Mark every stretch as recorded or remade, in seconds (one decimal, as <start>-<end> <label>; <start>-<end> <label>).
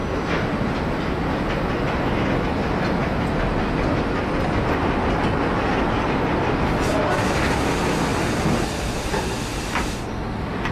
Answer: 0.0-10.7 recorded